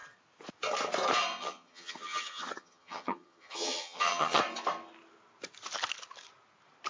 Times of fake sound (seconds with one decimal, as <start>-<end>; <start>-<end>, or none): 1.4-4.4